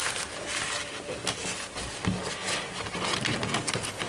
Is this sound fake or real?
real